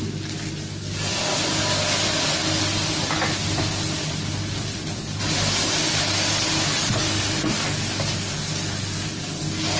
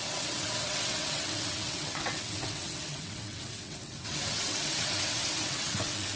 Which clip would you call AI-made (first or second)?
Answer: second